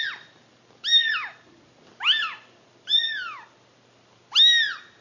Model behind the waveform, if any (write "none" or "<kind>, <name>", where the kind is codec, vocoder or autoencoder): none